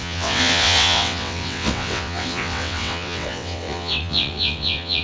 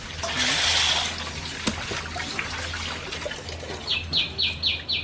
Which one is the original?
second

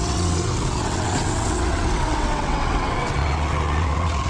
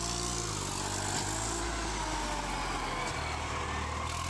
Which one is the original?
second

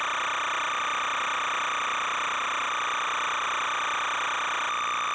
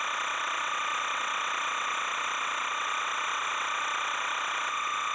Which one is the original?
first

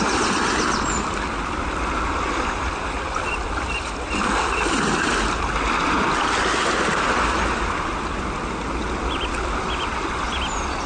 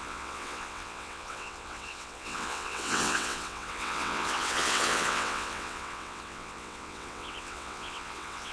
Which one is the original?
first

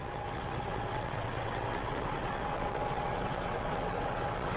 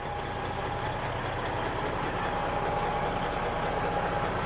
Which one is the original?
second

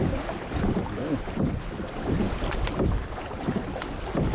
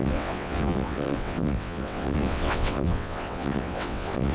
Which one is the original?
first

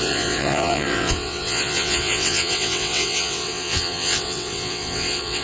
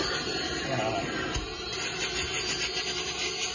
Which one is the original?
second